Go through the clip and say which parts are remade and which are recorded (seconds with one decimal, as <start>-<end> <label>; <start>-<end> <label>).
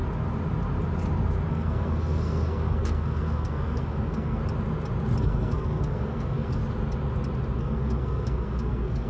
0.0-1.5 recorded; 1.5-4.4 remade; 4.4-5.2 recorded; 5.2-6.6 remade; 6.6-7.6 recorded; 7.6-9.1 remade